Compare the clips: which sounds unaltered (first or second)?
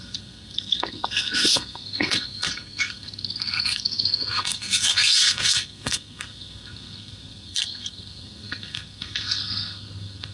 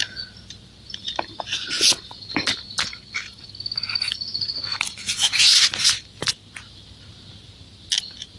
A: second